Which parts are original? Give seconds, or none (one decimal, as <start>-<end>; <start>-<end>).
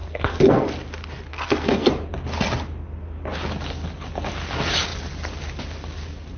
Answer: 0.7-1.3; 1.9-6.4